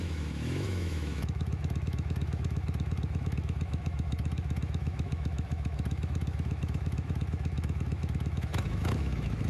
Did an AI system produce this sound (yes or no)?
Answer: yes